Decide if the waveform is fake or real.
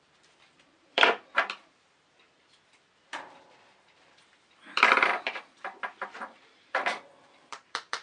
fake